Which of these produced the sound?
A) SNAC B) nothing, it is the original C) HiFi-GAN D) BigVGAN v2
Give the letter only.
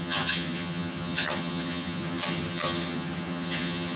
C